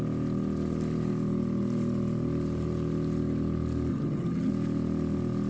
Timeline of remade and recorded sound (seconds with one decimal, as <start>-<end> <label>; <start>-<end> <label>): 0.0-3.9 recorded; 3.9-4.5 remade; 4.5-5.5 recorded